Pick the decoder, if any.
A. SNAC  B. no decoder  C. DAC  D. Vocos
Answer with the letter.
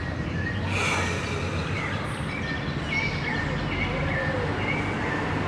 B